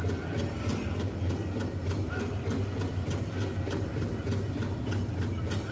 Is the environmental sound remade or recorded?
recorded